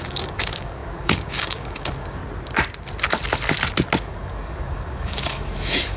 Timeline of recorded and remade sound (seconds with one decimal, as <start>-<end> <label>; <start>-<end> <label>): 0.0-2.2 remade; 2.2-4.0 recorded; 4.0-6.0 remade